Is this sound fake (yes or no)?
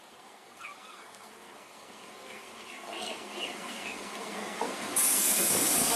yes